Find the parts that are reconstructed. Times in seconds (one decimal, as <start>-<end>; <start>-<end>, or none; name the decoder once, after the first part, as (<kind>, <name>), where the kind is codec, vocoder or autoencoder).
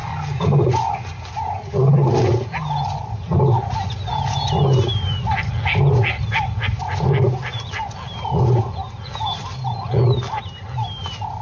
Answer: none